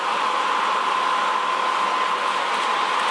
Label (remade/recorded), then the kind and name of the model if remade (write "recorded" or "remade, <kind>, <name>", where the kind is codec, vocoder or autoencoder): recorded